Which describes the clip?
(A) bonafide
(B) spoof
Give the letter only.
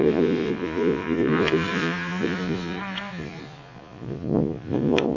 B